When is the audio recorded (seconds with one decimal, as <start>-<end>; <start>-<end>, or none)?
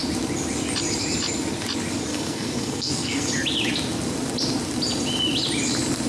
0.0-2.1; 3.3-6.1